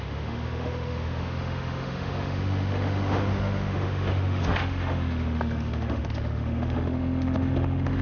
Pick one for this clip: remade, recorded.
remade